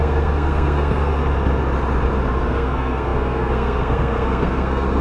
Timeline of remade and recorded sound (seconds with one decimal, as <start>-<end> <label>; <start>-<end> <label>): 0.0-1.1 remade; 1.1-2.3 recorded; 2.3-5.0 remade